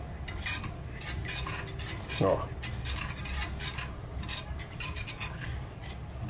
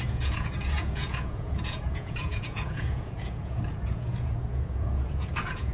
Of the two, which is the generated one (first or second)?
second